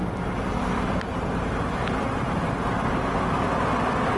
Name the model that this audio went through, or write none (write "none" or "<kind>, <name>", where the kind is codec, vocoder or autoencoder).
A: none